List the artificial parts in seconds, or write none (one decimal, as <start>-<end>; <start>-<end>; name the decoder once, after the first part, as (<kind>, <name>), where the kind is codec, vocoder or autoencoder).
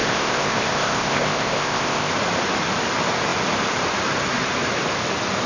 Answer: 0.0-2.1 (codec, ZipCodec)